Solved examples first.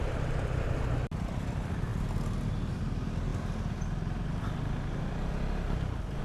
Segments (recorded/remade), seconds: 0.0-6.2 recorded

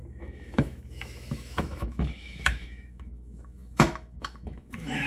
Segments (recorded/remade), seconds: 0.0-5.1 remade